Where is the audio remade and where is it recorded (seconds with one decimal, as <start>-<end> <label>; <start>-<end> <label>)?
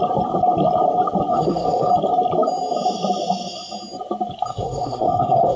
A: 0.0-1.3 recorded; 1.3-1.9 remade; 1.9-4.5 recorded; 4.5-5.6 remade